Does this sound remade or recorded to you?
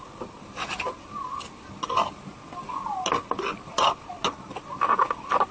recorded